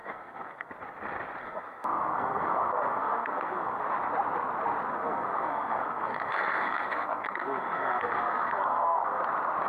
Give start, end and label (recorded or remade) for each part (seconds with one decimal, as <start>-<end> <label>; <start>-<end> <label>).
0.0-0.7 remade; 0.7-1.4 recorded; 1.4-3.8 remade; 3.8-4.9 recorded; 4.9-9.2 remade; 9.2-9.7 recorded